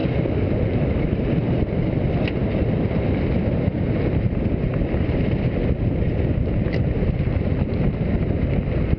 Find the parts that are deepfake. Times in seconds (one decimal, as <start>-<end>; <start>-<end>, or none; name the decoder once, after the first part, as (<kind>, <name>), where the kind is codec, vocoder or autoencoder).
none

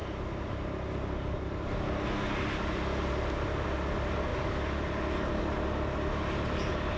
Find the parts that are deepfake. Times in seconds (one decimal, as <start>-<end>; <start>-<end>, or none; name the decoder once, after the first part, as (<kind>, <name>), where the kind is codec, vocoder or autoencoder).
none

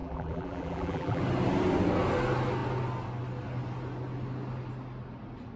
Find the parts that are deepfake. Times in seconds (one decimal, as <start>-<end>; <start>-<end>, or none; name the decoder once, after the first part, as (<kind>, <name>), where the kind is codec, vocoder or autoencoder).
0.0-1.2 (vocoder, BigVGAN v2)

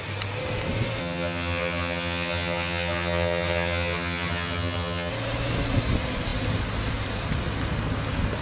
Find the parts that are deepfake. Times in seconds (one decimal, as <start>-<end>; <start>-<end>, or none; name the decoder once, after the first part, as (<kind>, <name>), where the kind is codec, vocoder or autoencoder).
1.0-5.1 (vocoder, HiFi-GAN)